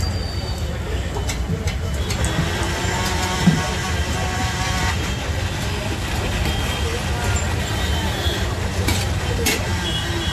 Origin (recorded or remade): recorded